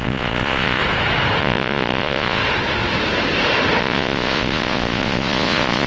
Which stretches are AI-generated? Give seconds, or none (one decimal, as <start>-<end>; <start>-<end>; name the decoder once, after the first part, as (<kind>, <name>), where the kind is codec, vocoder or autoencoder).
0.0-0.8 (vocoder, Vocos); 1.4-2.4; 3.8-5.9